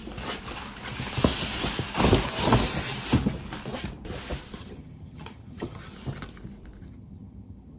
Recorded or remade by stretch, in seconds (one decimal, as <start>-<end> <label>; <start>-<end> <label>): 0.0-4.6 recorded; 4.6-5.9 remade; 5.9-6.8 recorded; 6.8-7.8 remade